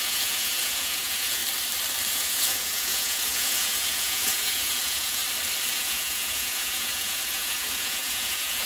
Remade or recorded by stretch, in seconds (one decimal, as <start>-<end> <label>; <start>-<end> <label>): 0.0-1.4 remade; 1.4-2.1 recorded; 2.1-5.2 remade; 5.2-5.7 recorded; 5.7-8.6 remade